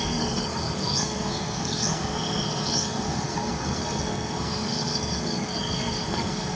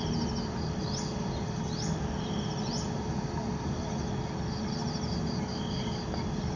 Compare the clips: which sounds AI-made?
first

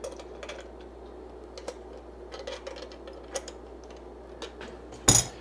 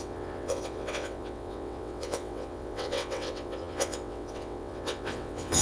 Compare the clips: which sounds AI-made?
second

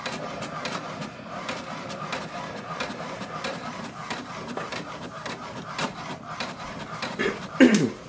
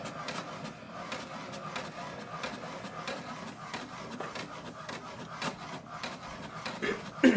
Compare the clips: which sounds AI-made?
first